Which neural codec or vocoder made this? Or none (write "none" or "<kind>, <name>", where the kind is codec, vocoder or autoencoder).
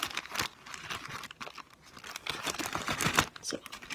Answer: none